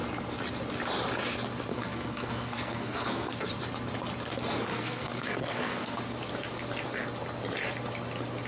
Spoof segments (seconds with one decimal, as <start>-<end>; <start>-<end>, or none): 1.7-3.5; 4.7-6.0